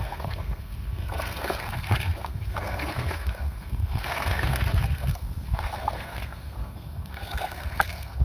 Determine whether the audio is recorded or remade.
remade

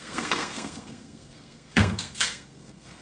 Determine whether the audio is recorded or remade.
remade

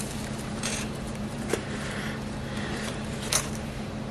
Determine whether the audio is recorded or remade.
remade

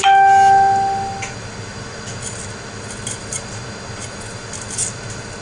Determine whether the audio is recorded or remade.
recorded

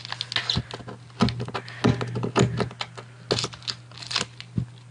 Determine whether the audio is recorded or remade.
recorded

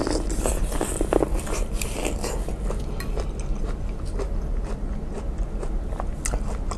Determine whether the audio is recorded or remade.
recorded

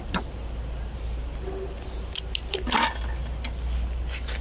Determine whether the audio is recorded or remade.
recorded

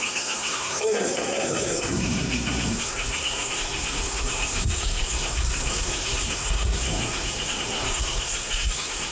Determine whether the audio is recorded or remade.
remade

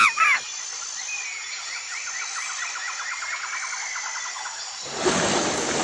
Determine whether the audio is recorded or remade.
recorded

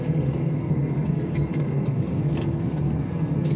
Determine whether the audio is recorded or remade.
remade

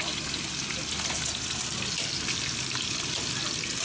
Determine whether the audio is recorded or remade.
recorded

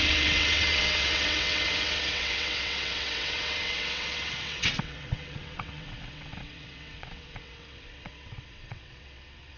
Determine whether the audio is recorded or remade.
remade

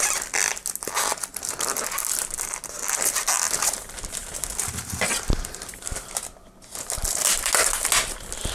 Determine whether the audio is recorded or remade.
recorded